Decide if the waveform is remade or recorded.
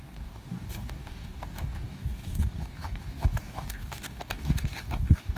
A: remade